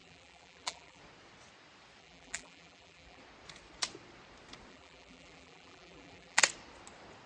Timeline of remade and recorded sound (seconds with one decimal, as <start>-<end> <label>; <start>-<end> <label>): 0.0-1.0 remade; 1.0-2.0 recorded; 2.0-3.2 remade; 3.2-4.7 recorded; 4.7-6.4 remade; 6.4-7.3 recorded